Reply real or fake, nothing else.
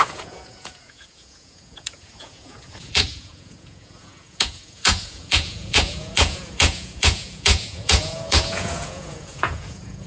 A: fake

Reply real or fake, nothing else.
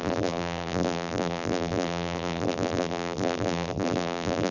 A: fake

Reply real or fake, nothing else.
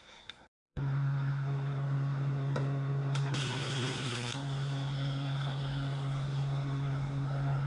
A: fake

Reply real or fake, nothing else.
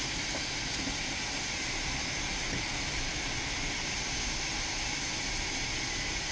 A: real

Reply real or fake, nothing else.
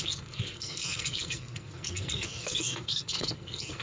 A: fake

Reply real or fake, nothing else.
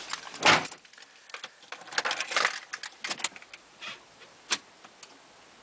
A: real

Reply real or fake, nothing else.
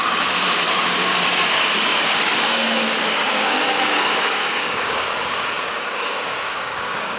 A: fake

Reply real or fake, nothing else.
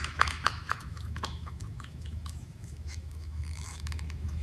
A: fake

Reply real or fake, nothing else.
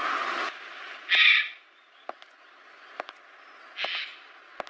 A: real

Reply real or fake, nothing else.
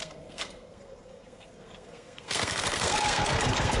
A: fake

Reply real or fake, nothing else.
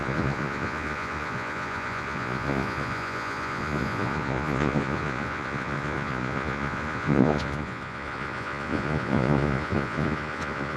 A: fake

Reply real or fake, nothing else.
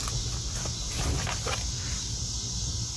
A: real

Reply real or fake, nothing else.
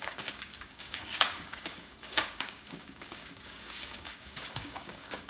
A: fake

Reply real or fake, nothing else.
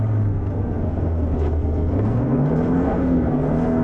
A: fake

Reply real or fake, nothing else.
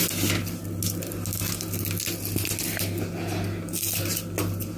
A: real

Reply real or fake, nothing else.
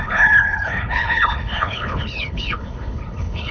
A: fake